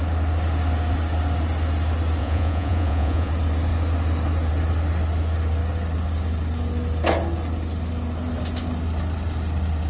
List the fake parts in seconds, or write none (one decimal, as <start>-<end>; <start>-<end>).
2.2-3.3